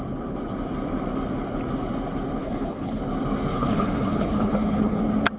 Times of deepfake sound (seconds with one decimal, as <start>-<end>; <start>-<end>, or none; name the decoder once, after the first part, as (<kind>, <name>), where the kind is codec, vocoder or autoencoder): 2.4-3.0 (codec, HILCodec); 3.5-5.0